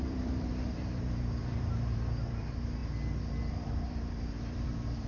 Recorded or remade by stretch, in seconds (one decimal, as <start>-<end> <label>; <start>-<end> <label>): 0.0-2.8 remade; 2.8-3.5 recorded; 3.5-5.1 remade